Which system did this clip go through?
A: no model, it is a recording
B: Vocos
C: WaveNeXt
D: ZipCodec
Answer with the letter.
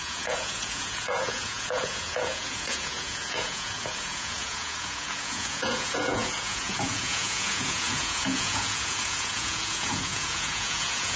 B